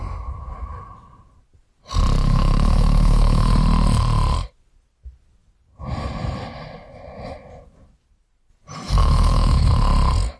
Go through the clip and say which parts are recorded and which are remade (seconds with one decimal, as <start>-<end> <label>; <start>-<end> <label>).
0.0-2.2 recorded; 2.2-3.5 remade; 3.5-9.0 recorded; 9.0-9.7 remade; 9.7-10.4 recorded